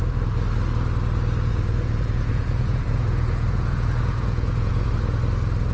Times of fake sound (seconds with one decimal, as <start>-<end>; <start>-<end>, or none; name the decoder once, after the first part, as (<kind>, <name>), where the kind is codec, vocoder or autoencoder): 1.5-4.9 (vocoder, Vocos)